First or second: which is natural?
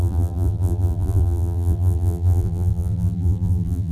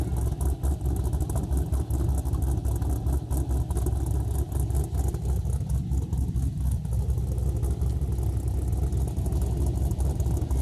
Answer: second